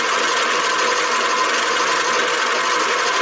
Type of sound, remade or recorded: recorded